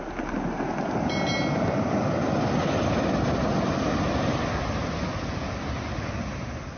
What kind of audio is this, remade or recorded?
recorded